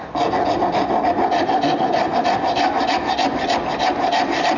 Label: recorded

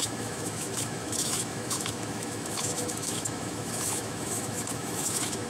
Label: remade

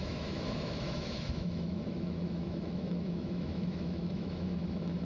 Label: remade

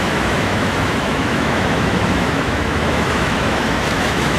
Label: remade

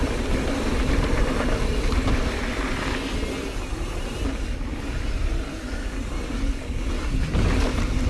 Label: recorded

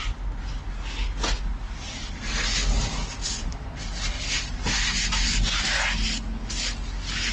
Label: recorded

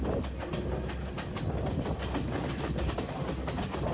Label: recorded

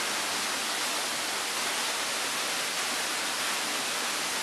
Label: recorded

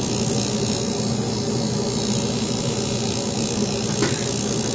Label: recorded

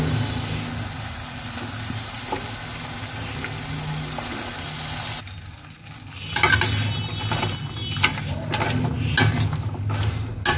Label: recorded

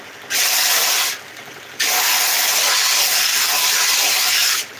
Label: recorded